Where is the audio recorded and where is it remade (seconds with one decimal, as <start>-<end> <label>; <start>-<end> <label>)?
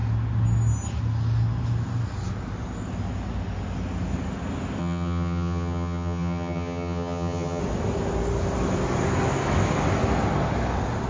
0.0-4.8 recorded; 4.8-7.6 remade; 7.6-11.1 recorded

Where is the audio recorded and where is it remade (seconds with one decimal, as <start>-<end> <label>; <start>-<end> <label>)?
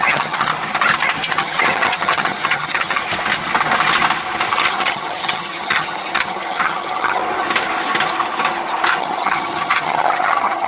0.0-0.5 remade; 0.5-1.3 recorded; 1.3-3.0 remade; 3.0-4.5 recorded; 4.5-7.2 remade; 7.2-9.0 recorded; 9.0-10.7 remade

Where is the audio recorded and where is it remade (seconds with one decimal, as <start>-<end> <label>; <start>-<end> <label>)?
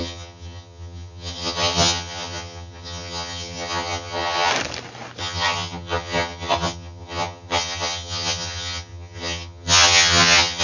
0.0-4.5 remade; 4.5-5.2 recorded; 5.2-10.6 remade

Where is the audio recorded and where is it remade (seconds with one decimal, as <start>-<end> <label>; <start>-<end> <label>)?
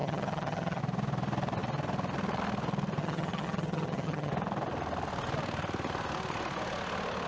0.0-0.8 remade; 0.8-3.0 recorded; 3.0-4.3 remade; 4.3-7.3 recorded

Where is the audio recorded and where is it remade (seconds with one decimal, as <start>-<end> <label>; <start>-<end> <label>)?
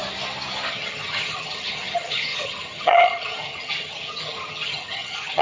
0.0-0.7 recorded; 0.7-5.4 remade